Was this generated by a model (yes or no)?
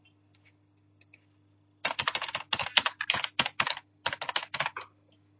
no